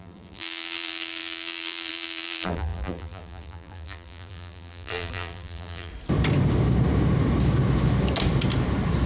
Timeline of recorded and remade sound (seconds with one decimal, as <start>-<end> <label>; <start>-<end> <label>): 0.0-5.9 remade; 5.9-9.1 recorded

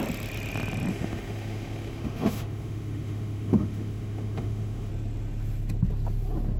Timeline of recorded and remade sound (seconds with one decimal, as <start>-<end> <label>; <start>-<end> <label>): 0.0-0.9 recorded; 0.9-4.9 remade; 4.9-6.6 recorded

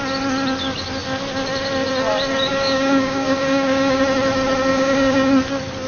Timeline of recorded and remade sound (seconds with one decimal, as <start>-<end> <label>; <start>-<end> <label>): 0.0-2.5 recorded; 2.5-4.0 remade; 4.0-4.7 recorded; 4.7-5.3 remade; 5.3-5.9 recorded

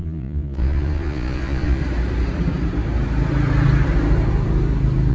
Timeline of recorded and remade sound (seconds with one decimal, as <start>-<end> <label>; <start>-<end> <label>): 0.0-1.8 remade; 1.8-5.1 recorded